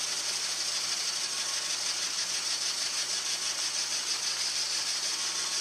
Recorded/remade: recorded